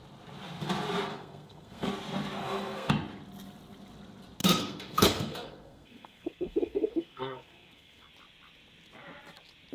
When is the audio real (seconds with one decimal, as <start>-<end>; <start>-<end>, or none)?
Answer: 0.0-1.1; 1.9-2.4; 2.9-4.4; 8.1-9.7